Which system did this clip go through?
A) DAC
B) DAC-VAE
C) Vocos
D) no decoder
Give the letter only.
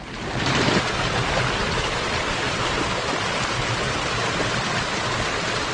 D